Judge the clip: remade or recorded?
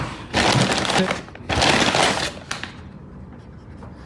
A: recorded